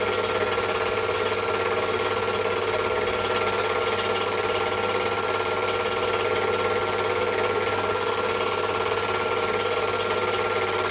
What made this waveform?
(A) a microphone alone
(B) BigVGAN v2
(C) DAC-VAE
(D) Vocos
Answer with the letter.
A